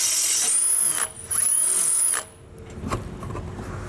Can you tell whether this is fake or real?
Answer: real